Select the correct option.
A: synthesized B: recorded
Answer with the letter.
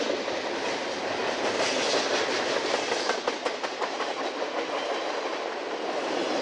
B